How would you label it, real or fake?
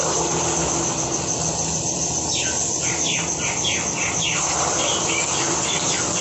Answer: real